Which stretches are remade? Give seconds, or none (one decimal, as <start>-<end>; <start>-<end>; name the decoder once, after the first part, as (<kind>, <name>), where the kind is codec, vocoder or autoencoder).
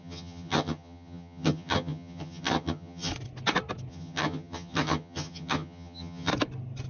0.0-3.1 (vocoder, HiFi-GAN); 3.9-6.3